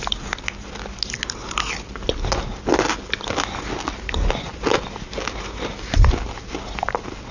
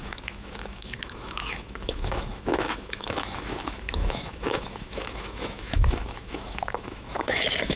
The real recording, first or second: first